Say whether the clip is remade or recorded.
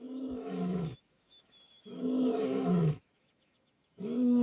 remade